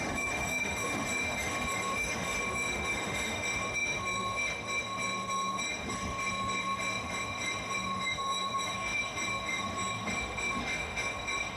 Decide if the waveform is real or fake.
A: fake